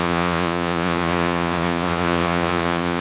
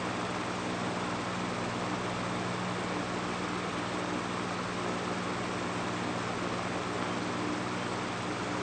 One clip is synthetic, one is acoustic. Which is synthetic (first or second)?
first